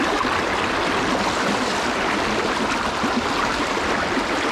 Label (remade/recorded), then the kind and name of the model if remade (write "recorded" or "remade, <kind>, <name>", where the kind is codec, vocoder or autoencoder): recorded